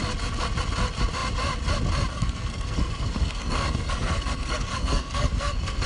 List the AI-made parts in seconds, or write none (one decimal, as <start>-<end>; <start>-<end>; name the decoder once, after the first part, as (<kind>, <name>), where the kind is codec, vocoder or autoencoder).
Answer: 2.1-5.9 (codec, SNAC)